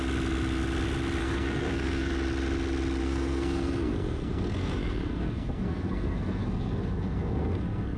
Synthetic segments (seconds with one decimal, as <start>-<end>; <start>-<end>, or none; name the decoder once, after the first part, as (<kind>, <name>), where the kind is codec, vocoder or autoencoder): 1.2-2.1 (codec, SNAC); 3.0-8.0